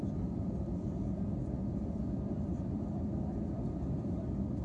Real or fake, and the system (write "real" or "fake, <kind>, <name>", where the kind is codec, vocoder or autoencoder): real